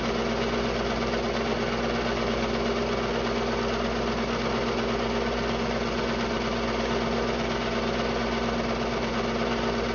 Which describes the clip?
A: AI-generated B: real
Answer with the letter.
B